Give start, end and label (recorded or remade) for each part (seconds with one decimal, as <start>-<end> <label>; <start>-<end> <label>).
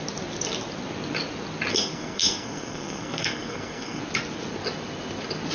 0.0-1.7 recorded; 1.7-4.0 remade; 4.0-5.5 recorded